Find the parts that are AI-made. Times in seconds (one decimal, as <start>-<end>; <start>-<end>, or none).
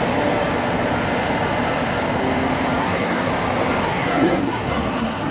2.8-3.3; 3.8-5.3